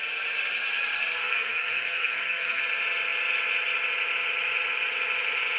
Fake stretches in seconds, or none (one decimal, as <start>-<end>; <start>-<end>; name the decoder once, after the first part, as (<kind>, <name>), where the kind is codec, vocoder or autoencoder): 1.2-2.6 (codec, SNAC)